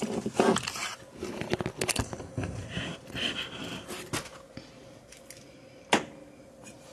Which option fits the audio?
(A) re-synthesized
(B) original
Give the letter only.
B